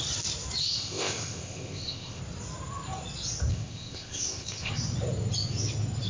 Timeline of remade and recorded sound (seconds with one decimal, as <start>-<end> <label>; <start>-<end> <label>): 0.0-0.6 recorded; 0.6-2.2 remade; 2.2-3.5 recorded; 3.5-4.7 remade; 4.7-6.1 recorded